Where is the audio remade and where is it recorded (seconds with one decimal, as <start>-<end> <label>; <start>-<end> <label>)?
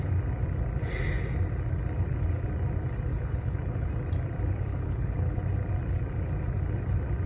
0.0-3.1 recorded; 3.1-3.9 remade; 3.9-4.7 recorded; 4.7-5.4 remade; 5.4-7.3 recorded